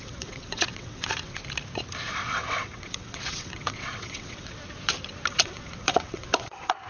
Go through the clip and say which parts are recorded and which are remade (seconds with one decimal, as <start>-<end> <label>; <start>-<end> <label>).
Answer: 0.0-1.4 remade; 1.4-2.1 recorded; 2.1-4.6 remade; 4.6-5.3 recorded; 5.3-6.9 remade